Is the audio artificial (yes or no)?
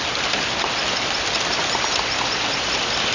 no